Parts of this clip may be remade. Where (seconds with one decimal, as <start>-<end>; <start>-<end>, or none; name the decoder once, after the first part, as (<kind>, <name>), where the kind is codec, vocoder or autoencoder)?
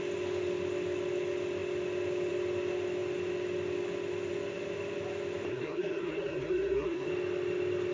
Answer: 5.5-7.1 (codec, SNAC)